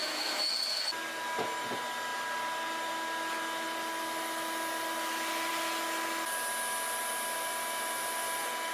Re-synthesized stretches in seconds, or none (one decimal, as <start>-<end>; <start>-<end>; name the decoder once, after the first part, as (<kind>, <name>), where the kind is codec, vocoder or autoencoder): 0.0-0.5 (autoencoder, DAC-VAE)

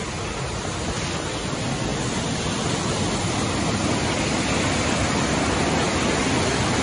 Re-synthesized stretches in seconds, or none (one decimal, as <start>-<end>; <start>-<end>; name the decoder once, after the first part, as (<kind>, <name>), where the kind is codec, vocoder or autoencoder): none

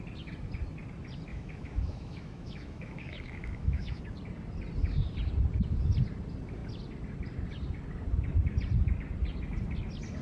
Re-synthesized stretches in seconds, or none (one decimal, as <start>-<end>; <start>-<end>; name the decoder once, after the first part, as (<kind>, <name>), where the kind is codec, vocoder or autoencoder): 1.3-4.0 (autoencoder, DAC-VAE)

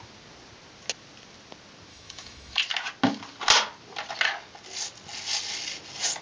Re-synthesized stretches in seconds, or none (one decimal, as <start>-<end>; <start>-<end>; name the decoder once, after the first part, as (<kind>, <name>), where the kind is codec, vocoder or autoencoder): 1.9-2.6 (autoencoder, DAC-VAE)

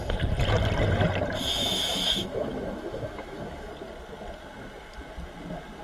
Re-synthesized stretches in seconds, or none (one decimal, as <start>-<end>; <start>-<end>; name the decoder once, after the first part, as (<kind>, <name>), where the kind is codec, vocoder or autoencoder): 1.6-3.7 (autoencoder, DAC-VAE)